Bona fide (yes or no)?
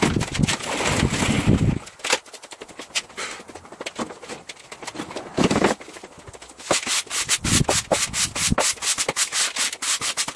yes